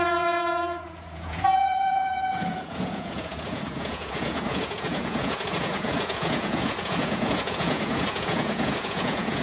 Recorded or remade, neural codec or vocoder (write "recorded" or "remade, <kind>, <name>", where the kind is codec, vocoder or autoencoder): remade, vocoder, Vocos